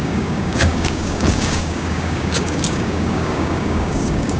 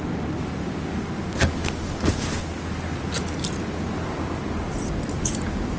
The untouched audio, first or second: second